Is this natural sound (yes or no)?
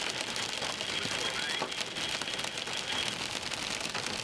yes